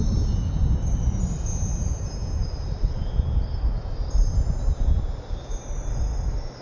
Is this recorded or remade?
remade